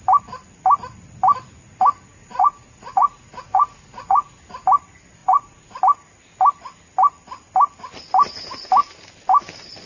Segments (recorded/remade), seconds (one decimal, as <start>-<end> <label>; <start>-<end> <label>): 0.0-2.1 recorded; 2.1-4.4 remade; 4.4-5.2 recorded; 5.2-5.8 remade; 5.8-9.9 recorded